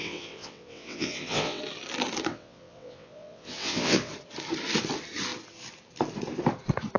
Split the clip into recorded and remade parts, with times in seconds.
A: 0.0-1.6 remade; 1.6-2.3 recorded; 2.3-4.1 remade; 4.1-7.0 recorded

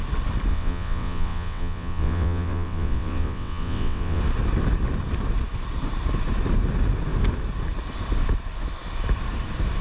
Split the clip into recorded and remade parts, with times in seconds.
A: 0.0-0.5 recorded; 0.5-4.2 remade; 4.2-9.8 recorded

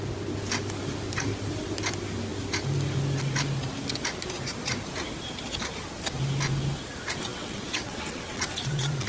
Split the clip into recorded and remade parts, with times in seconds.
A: 0.0-7.3 recorded; 7.3-9.1 remade

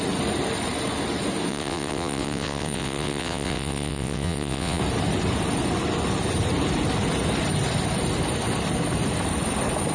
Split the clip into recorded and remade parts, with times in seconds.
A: 0.0-1.5 recorded; 1.5-4.8 remade; 4.8-9.9 recorded

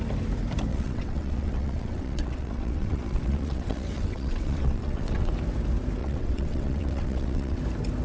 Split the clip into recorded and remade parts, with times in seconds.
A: 0.0-0.7 recorded; 0.7-5.3 remade; 5.3-6.0 recorded; 6.0-7.6 remade; 7.6-8.0 recorded

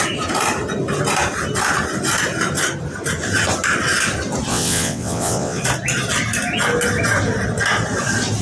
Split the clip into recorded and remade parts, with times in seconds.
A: 0.0-4.5 recorded; 4.5-5.6 remade; 5.6-8.4 recorded

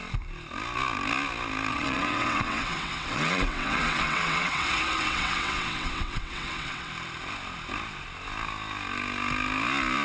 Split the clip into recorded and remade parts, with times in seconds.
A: 0.0-1.7 recorded; 1.7-6.9 remade; 6.9-10.0 recorded